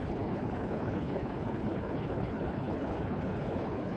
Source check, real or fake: fake